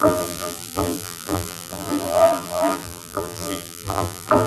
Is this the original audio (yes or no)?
no